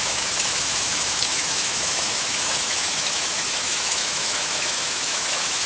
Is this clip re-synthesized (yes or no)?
yes